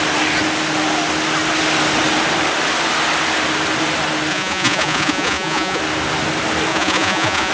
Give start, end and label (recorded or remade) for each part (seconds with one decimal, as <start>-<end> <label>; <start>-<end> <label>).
0.0-4.3 recorded; 4.3-5.8 remade; 5.8-6.7 recorded; 6.7-7.5 remade